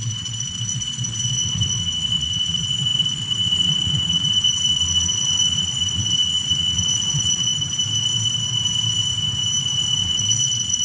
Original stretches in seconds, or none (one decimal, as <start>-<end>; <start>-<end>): 7.5-10.0